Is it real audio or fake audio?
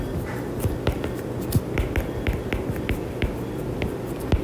real